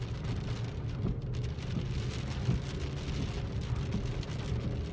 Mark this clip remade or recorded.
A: recorded